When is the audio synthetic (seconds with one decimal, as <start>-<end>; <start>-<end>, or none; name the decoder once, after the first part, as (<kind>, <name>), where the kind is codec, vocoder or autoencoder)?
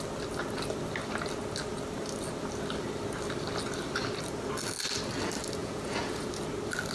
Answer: 5.6-6.3 (vocoder, Vocos)